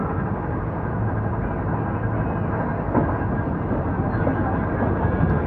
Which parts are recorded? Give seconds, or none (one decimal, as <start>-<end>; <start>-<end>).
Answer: 0.6-5.5